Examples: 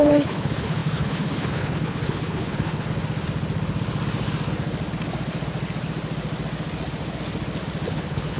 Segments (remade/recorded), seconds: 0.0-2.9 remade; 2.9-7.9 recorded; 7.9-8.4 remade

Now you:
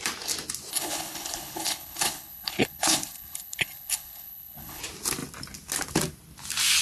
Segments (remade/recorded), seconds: 0.0-0.7 recorded; 0.7-4.8 remade; 4.8-6.8 recorded

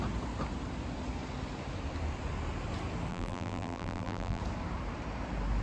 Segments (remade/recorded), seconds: 0.0-3.1 recorded; 3.1-4.4 remade; 4.4-5.6 recorded

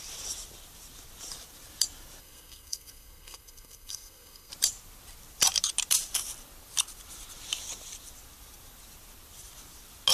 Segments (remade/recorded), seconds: 0.0-2.2 recorded; 2.2-4.5 remade; 4.5-10.1 recorded

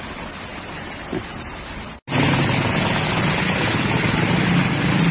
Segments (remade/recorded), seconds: 0.0-5.1 recorded

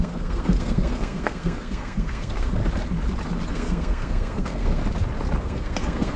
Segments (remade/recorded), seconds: 0.0-2.6 remade; 2.6-3.5 recorded; 3.5-4.8 remade; 4.8-5.4 recorded; 5.4-6.2 remade

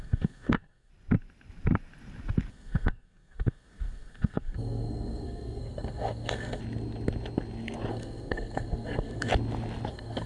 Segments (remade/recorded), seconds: 0.0-0.9 remade; 0.9-2.5 recorded; 2.5-6.6 remade; 6.6-7.9 recorded; 7.9-9.3 remade; 9.3-9.9 recorded; 9.9-10.3 remade